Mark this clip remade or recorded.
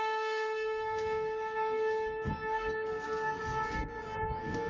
remade